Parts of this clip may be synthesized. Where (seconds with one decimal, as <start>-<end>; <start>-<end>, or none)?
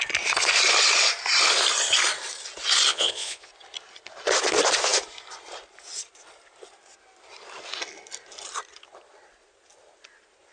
2.9-3.5